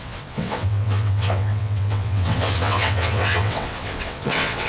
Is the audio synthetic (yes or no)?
yes